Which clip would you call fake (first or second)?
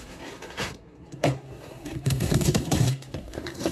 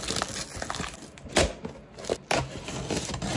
first